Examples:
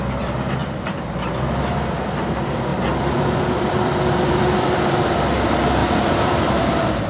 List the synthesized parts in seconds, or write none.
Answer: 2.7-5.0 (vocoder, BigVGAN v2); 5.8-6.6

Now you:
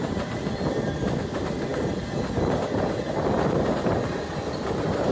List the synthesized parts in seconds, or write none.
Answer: none

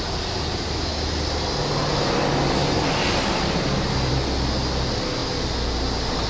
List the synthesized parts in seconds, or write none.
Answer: none

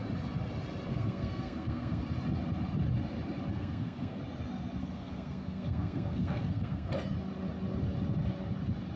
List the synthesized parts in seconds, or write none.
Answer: 0.9-2.0 (codec, SNAC); 3.5-4.2; 4.8-6.9

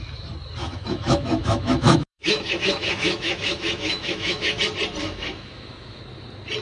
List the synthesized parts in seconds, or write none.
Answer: 0.6-4.6 (autoencoder, DAC-VAE); 5.0-6.0

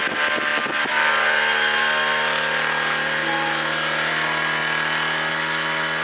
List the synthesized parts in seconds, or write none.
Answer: none

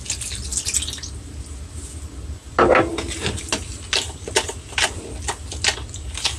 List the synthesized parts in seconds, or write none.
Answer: none